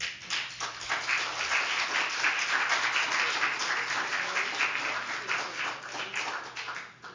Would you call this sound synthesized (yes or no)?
no